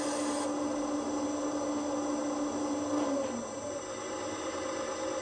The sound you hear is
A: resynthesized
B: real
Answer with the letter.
B